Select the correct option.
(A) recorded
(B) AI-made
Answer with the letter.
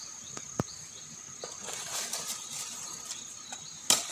A